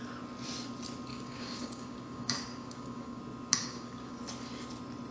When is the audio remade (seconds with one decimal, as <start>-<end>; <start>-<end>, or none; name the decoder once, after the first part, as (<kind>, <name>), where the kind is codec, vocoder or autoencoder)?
1.1-3.2 (codec, DAC); 3.6-4.2